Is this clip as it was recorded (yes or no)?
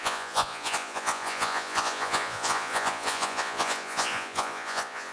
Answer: no